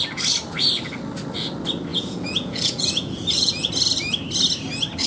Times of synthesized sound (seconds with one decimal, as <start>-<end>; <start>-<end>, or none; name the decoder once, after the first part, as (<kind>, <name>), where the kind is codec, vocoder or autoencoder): 1.9-3.7 (vocoder, Vocos)